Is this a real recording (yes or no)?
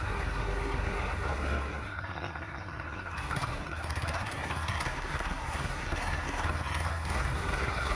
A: no